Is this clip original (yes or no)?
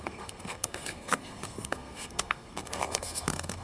no